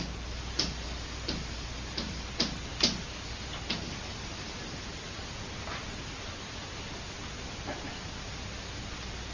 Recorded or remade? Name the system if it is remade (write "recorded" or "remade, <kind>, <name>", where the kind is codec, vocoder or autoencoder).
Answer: recorded